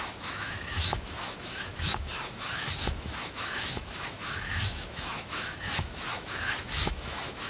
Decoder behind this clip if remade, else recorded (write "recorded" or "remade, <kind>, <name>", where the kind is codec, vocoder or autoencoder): remade, autoencoder, DAC-VAE